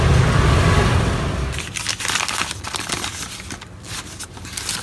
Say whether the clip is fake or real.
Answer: real